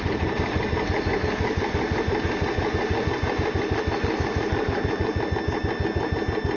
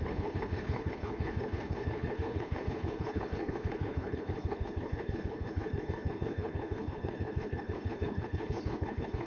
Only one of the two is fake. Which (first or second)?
second